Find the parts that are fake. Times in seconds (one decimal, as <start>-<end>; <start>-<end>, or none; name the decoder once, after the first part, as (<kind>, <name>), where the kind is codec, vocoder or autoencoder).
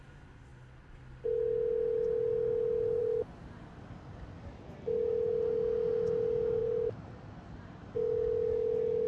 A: 6.6-7.8 (vocoder, BigVGAN v2)